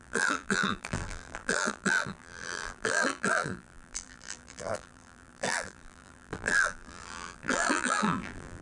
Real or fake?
fake